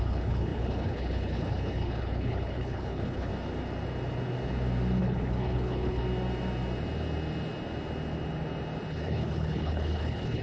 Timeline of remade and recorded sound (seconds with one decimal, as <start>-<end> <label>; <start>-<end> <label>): 0.0-3.3 remade; 3.3-5.0 recorded; 5.0-6.0 remade; 6.0-8.9 recorded; 8.9-10.4 remade